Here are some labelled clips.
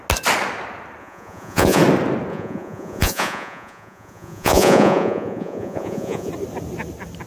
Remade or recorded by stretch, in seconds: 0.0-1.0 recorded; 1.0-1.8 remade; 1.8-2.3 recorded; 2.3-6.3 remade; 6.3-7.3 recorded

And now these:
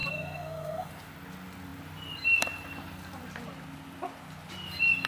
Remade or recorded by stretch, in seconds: 0.0-0.9 remade; 0.9-5.1 recorded

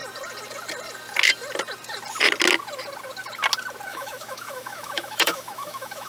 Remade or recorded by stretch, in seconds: 0.0-3.9 recorded; 3.9-6.1 remade

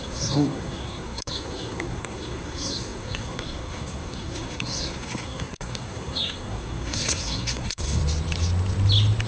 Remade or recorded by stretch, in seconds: 0.0-8.0 remade; 8.0-9.3 recorded

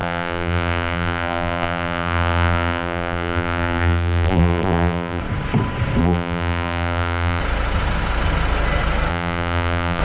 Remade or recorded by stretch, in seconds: 0.0-5.2 remade; 5.2-6.0 recorded; 6.0-7.4 remade; 7.4-9.1 recorded; 9.1-10.0 remade